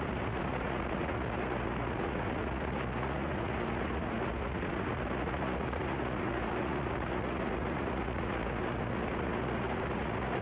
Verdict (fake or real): fake